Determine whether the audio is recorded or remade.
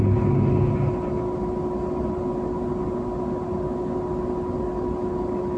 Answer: recorded